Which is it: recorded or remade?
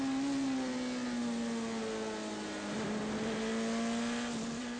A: recorded